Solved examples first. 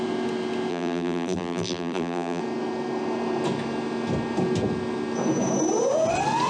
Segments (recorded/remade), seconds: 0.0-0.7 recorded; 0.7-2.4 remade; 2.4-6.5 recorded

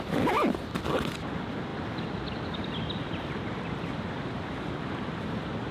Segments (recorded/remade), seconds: 0.0-1.7 remade; 1.7-3.0 recorded; 3.0-5.7 remade

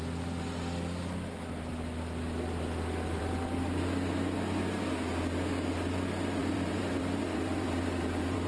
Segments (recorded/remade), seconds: 0.0-6.4 recorded; 6.4-8.5 remade

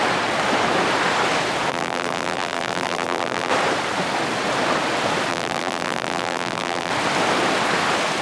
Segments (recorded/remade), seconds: 0.0-1.7 recorded; 1.7-3.5 remade; 3.5-5.3 recorded; 5.3-6.9 remade; 6.9-8.2 recorded

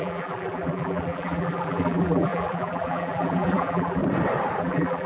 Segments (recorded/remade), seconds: 0.0-4.0 remade; 4.0-4.6 recorded; 4.6-5.1 remade

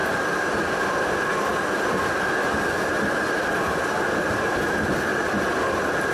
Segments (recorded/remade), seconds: 0.0-0.5 recorded; 0.5-6.1 remade